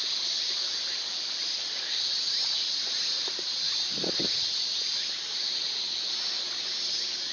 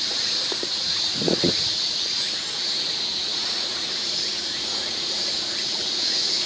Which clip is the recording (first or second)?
first